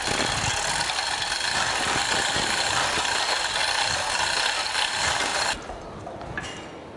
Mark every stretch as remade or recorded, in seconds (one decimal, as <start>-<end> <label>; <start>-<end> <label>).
0.0-7.0 recorded